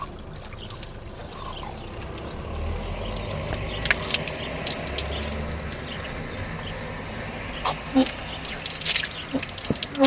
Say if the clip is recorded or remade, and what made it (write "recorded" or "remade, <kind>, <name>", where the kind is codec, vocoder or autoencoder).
recorded